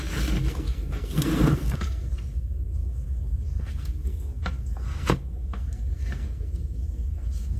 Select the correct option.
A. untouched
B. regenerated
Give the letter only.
B